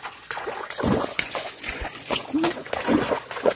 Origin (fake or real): fake